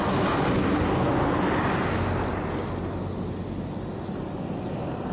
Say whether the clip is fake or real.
real